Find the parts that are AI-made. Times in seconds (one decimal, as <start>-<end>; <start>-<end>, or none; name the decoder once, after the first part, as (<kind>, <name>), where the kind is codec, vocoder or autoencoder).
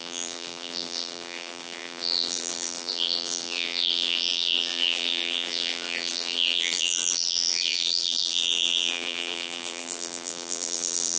0.0-11.2 (vocoder, BigVGAN v2)